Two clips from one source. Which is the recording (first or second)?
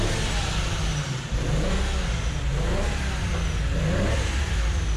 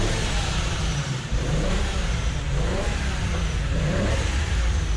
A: first